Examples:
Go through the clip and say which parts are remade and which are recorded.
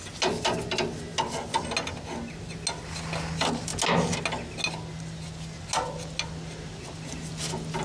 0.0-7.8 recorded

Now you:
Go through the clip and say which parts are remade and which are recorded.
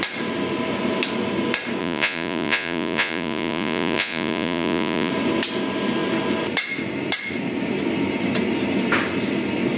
0.0-1.8 recorded; 1.8-5.1 remade; 5.1-9.8 recorded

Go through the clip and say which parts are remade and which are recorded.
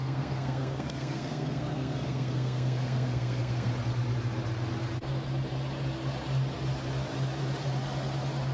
0.0-3.7 remade; 3.7-8.5 recorded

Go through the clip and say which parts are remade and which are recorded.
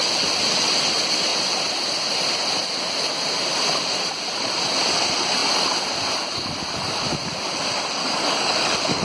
0.0-8.0 recorded; 8.0-9.0 remade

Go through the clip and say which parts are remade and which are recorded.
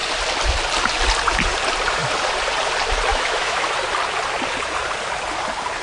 0.0-3.1 recorded; 3.1-3.6 remade; 3.6-5.8 recorded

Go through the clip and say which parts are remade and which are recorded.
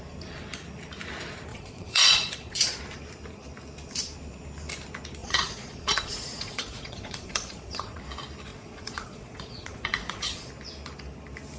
0.0-1.5 recorded; 1.5-2.8 remade; 2.8-5.2 recorded; 5.2-8.0 remade; 8.0-8.5 recorded; 8.5-10.5 remade; 10.5-11.6 recorded